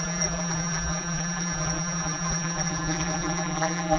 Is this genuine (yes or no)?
no